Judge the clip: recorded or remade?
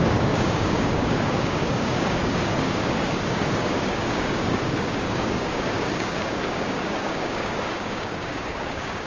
remade